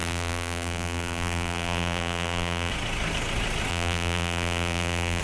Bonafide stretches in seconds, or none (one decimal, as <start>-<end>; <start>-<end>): 2.7-3.7